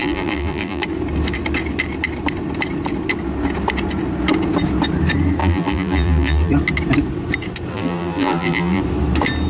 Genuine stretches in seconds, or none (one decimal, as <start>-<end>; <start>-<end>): 0.8-5.4; 6.5-7.7; 8.8-9.5